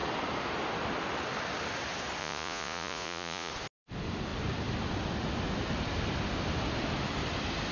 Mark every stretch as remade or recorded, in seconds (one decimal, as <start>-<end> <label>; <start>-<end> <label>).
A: 0.0-2.2 recorded; 2.2-3.5 remade; 3.5-7.7 recorded